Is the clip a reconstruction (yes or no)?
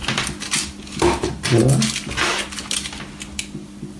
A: no